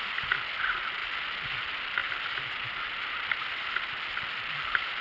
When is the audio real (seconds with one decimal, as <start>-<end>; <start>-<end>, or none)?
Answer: 0.0-5.0